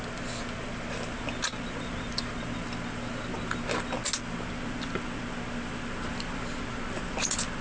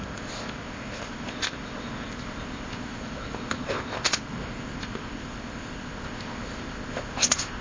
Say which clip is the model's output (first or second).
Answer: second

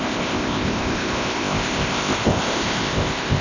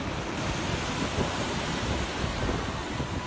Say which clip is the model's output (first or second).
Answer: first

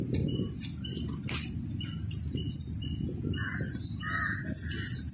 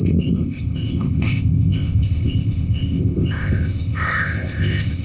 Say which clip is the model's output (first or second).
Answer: second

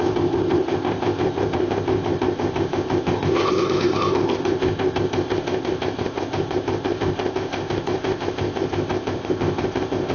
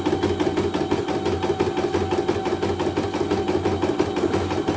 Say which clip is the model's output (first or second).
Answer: first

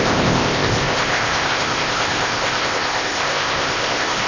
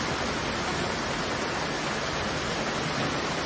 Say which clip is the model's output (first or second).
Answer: first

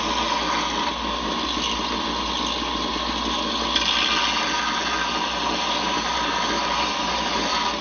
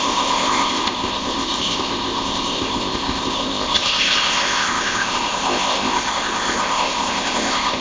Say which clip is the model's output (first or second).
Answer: second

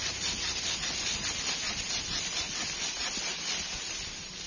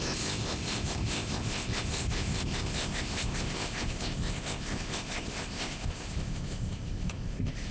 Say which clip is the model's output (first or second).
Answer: second